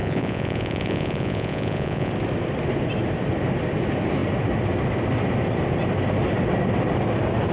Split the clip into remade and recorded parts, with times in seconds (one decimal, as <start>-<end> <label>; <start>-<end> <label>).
0.0-2.1 remade; 2.1-7.5 recorded